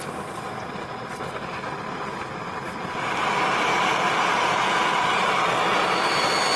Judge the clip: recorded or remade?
recorded